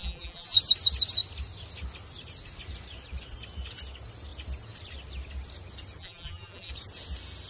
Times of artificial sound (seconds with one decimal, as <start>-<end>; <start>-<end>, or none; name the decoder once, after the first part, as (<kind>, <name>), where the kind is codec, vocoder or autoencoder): 0.0-0.6 (vocoder, BigVGAN v2); 6.0-6.7